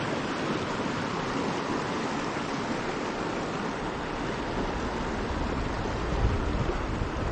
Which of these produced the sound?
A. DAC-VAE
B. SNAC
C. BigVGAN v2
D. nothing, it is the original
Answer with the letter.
D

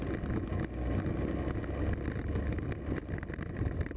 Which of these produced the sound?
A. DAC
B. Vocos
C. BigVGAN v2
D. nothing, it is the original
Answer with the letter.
D